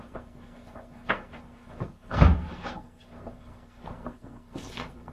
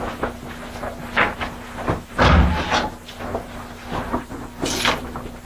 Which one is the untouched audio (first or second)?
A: second